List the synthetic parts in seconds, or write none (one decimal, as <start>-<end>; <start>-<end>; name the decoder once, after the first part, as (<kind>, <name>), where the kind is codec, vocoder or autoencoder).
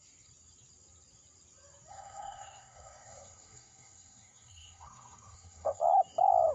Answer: 1.9-5.8 (codec, SNAC)